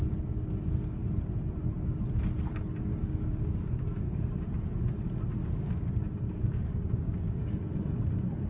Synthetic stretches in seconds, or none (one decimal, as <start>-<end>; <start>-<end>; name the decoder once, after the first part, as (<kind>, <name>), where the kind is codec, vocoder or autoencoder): 2.9-4.3 (codec, DAC); 5.4-7.5